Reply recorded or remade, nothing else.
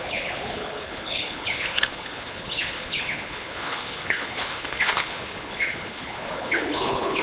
remade